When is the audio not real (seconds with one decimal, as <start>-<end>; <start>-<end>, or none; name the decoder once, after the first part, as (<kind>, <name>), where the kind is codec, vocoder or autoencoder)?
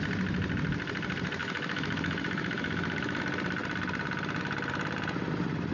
1.4-3.2 (autoencoder, DAC-VAE)